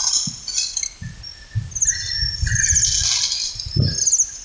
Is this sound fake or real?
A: real